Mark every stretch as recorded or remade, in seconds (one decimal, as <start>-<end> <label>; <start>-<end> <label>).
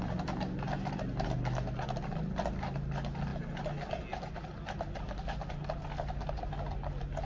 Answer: 0.0-7.2 recorded